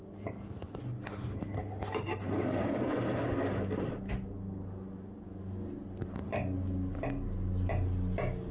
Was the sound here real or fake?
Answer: real